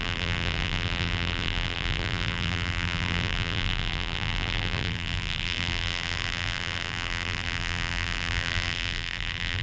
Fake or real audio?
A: fake